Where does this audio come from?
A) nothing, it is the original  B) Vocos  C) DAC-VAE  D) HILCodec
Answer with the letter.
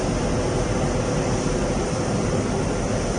A